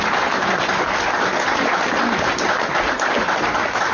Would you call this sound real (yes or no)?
yes